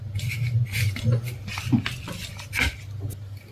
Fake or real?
real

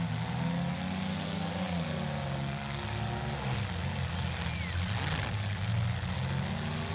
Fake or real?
real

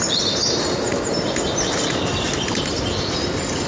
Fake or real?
real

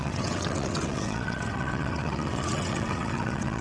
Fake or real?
fake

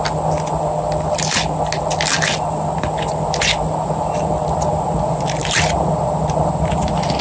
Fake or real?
real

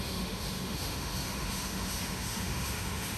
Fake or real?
fake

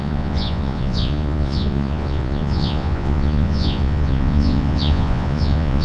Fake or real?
fake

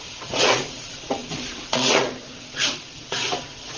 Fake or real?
fake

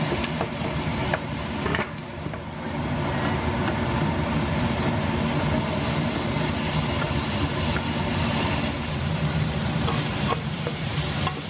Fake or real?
fake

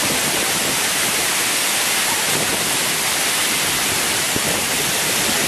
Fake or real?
real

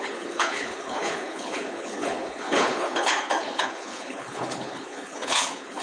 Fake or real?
fake